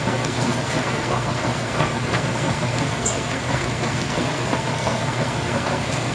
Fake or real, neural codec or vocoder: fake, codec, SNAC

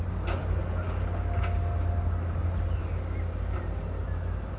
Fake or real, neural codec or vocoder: real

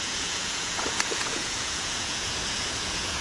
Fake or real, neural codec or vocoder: fake, vocoder, Vocos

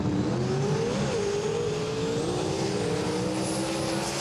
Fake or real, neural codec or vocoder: real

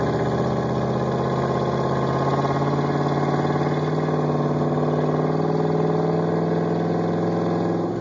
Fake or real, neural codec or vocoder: real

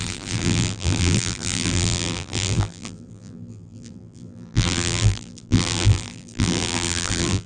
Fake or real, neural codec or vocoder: fake, vocoder, BigVGAN v2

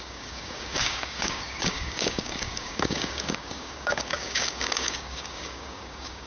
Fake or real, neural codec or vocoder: fake, codec, DAC